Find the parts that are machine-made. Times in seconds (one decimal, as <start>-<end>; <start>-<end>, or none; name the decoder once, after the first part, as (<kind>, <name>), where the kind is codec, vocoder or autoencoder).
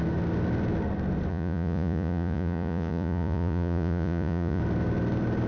1.3-4.6 (vocoder, Vocos)